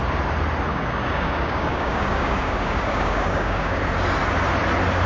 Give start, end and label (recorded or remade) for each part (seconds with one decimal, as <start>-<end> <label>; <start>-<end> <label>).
0.0-0.7 recorded; 0.7-3.8 remade; 3.8-5.1 recorded